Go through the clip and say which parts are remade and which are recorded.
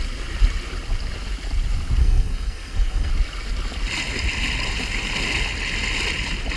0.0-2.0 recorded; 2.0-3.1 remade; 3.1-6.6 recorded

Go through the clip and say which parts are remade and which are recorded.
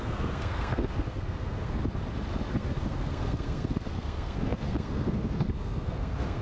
0.0-1.8 remade; 1.8-2.5 recorded; 2.5-6.4 remade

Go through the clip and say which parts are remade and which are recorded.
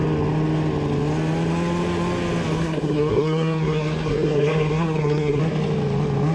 0.0-2.6 recorded; 2.6-5.4 remade; 5.4-6.3 recorded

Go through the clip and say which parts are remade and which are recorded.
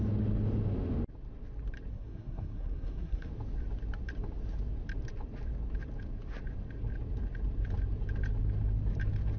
0.0-1.9 recorded; 1.9-3.3 remade; 3.3-9.4 recorded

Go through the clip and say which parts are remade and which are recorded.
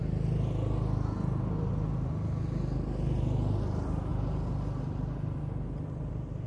0.0-6.5 recorded